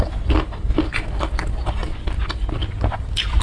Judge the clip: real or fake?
real